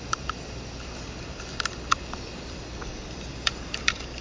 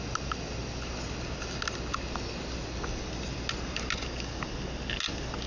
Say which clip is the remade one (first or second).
first